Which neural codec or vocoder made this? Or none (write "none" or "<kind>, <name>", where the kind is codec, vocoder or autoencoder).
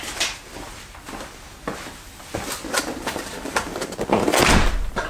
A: none